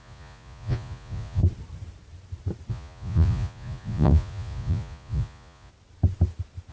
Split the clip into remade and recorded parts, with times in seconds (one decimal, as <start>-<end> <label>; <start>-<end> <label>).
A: 0.0-1.4 remade; 1.4-2.7 recorded; 2.7-5.7 remade; 5.7-6.7 recorded